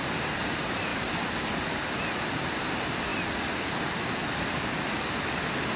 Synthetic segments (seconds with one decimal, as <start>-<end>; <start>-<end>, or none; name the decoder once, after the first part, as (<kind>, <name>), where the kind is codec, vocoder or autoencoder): none